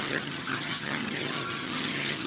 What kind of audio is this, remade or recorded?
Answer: remade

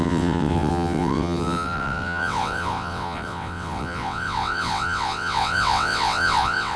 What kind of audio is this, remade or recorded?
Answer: remade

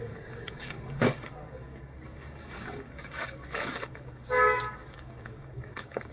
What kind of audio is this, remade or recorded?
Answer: remade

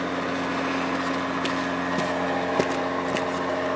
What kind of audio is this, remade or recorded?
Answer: recorded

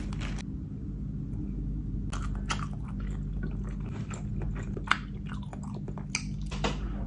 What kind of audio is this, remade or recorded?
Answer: recorded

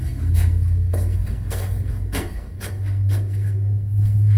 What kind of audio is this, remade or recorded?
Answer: remade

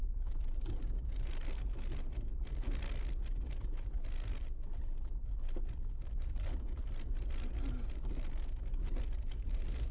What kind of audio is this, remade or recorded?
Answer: recorded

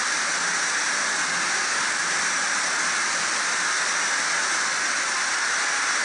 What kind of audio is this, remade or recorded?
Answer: recorded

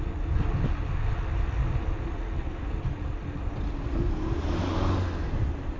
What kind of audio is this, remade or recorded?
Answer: recorded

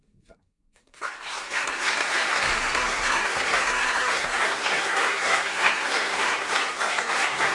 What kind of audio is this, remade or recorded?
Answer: remade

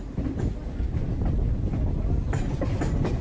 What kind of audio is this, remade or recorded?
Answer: recorded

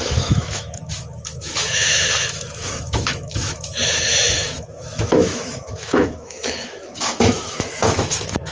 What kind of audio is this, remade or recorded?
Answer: remade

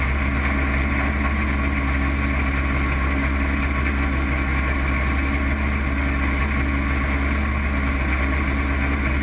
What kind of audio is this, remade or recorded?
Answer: recorded